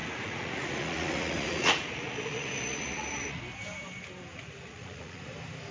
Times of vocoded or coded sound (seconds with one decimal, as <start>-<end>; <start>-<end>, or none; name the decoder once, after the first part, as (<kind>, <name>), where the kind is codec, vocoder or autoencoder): 0.0-3.4 (vocoder, Vocos); 4.3-5.3